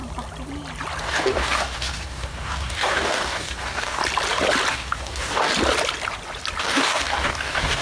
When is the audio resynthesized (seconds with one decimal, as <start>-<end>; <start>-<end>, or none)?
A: 1.0-4.0; 4.7-5.5; 6.6-7.8